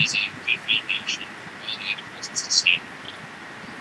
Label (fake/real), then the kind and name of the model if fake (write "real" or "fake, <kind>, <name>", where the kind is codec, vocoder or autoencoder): real